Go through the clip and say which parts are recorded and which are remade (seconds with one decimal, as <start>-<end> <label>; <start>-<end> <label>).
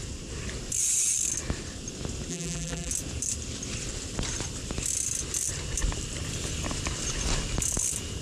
0.0-2.3 recorded; 2.3-2.9 remade; 2.9-8.2 recorded